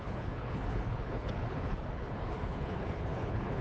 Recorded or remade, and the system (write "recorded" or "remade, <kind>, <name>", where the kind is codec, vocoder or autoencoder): remade, codec, HILCodec